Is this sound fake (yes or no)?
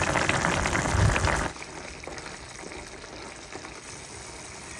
no